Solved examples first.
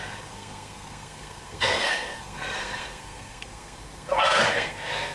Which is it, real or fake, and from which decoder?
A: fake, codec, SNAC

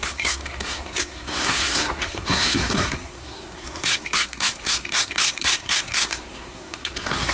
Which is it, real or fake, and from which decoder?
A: fake, codec, SNAC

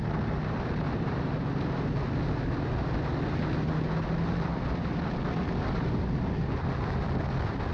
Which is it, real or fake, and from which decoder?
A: real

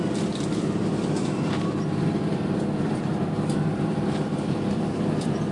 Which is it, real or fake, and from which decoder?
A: fake, vocoder, BigVGAN v2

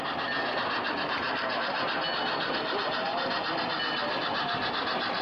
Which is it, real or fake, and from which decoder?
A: real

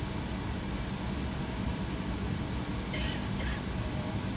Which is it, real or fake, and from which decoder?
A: real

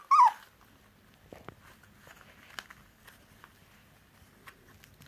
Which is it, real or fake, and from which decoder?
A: real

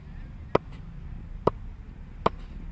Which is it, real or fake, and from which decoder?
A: real